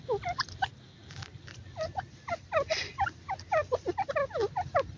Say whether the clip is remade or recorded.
recorded